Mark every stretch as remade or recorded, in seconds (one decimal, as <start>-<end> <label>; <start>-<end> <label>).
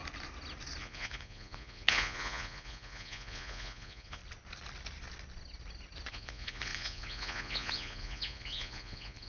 0.0-0.8 recorded; 0.8-4.2 remade; 4.2-6.1 recorded; 6.1-9.3 remade